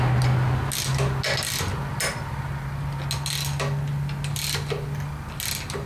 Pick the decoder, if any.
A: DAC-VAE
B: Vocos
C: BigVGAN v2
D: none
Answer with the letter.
D